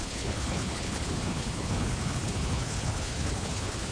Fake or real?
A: fake